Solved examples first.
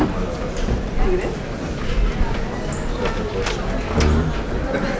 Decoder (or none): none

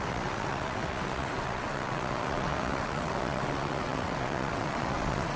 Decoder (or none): vocoder, WaveNeXt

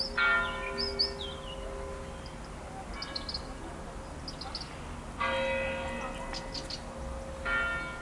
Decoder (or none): none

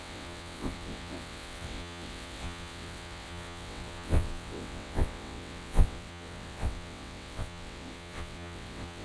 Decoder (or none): vocoder, WaveNeXt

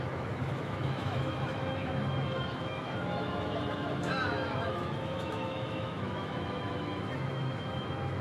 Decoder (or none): autoencoder, DAC-VAE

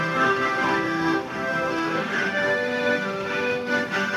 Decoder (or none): autoencoder, DAC-VAE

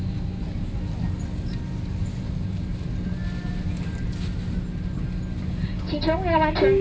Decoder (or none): none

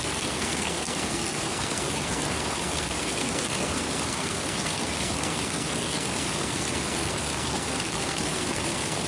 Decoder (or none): codec, SNAC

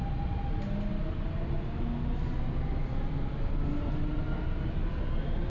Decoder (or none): none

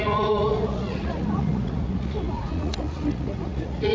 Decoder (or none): vocoder, Vocos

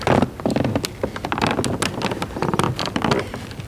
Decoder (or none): none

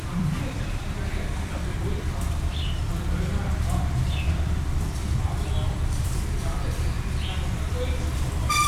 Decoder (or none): vocoder, BigVGAN v2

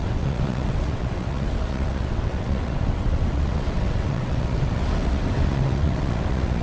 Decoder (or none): vocoder, WaveNeXt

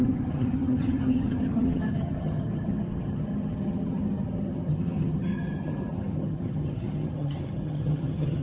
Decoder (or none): vocoder, HiFi-GAN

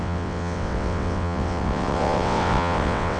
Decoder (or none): vocoder, WaveNeXt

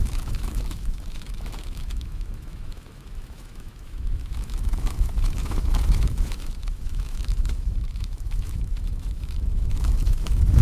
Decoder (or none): autoencoder, DAC-VAE